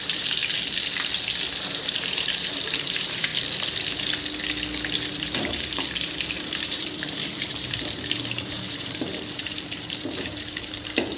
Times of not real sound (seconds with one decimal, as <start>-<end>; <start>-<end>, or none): 0.0-0.4; 1.9-3.3; 5.1-11.2